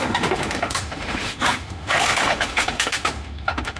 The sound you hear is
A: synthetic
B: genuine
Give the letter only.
A